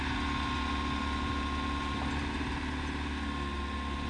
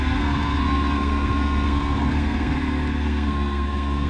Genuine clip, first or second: first